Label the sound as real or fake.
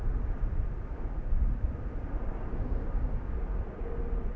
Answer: real